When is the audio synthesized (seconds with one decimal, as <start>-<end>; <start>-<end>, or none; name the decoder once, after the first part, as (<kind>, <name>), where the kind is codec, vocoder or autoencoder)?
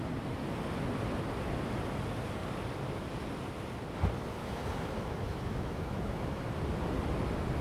4.4-6.4 (autoencoder, DAC-VAE)